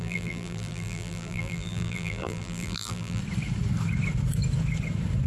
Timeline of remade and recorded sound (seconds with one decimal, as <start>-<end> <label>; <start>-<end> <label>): 0.0-3.2 remade; 3.2-5.3 recorded

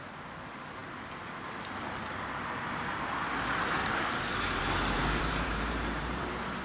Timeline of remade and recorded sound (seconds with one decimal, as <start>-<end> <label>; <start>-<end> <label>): 0.0-3.8 recorded; 3.8-6.6 remade